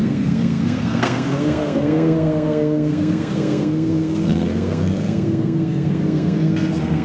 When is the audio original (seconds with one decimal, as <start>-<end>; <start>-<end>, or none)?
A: none